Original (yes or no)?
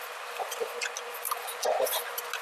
yes